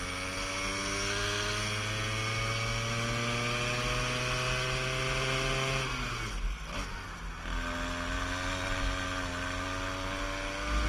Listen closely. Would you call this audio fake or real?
real